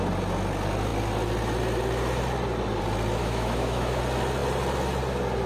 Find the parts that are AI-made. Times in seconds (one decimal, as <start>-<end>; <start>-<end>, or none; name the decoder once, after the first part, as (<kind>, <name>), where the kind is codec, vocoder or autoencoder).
3.2-4.0 (autoencoder, DAC-VAE)

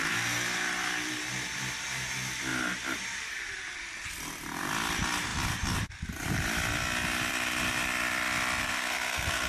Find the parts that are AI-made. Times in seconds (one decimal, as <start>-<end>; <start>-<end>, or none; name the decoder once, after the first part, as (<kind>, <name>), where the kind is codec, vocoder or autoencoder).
8.6-9.5 (codec, SNAC)

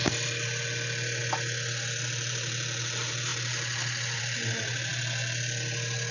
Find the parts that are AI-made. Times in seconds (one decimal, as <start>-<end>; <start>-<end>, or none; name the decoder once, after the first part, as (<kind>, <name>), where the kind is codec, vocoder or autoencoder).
none

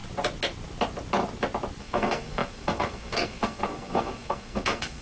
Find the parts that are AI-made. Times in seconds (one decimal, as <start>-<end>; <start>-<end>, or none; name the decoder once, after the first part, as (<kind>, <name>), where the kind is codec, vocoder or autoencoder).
1.8-5.0 (codec, SNAC)

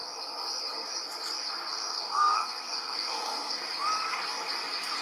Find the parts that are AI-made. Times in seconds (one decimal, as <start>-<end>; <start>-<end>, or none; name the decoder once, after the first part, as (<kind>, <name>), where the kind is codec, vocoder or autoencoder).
1.7-3.6 (codec, SNAC)

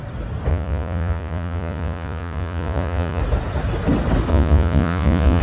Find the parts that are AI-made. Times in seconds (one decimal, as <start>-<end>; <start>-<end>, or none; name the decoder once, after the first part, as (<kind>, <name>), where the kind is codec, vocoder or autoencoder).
0.5-3.2 (vocoder, Vocos); 4.3-5.4

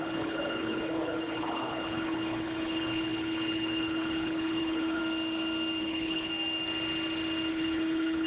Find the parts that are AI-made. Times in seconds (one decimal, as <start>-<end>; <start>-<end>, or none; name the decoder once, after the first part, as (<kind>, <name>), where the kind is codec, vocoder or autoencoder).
0.0-5.0 (codec, HILCodec); 5.8-6.3; 7.5-8.3

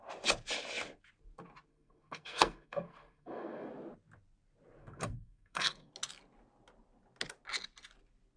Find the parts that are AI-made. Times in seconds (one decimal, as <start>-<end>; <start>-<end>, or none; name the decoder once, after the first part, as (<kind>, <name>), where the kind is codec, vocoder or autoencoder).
1.7-3.7 (codec, SNAC); 4.8-5.9